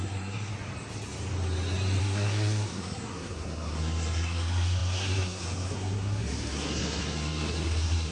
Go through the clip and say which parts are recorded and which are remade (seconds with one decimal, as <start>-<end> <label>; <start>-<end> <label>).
0.0-0.5 remade; 0.5-2.0 recorded; 2.0-8.1 remade